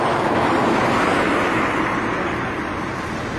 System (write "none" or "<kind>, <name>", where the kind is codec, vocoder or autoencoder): none